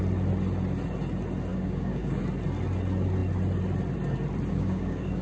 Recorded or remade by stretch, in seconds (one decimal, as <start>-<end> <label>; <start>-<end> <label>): 0.0-1.5 recorded; 1.5-2.2 remade; 2.2-4.5 recorded; 4.5-5.2 remade